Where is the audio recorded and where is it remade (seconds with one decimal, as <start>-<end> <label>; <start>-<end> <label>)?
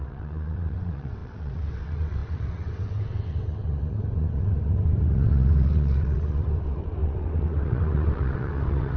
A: 0.0-9.0 remade